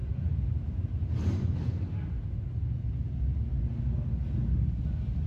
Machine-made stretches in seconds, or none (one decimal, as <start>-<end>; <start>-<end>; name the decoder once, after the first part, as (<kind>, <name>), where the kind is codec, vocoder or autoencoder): 0.0-3.2 (vocoder, BigVGAN v2)